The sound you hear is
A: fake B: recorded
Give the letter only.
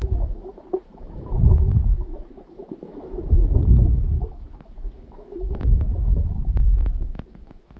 A